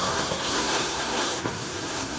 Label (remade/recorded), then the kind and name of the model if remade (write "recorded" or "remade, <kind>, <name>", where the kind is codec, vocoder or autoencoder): remade, codec, SNAC